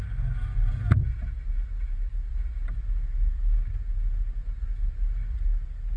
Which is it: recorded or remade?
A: recorded